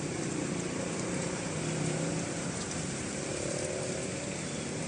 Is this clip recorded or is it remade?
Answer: remade